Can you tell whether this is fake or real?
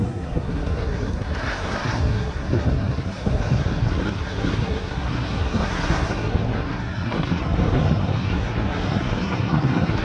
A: fake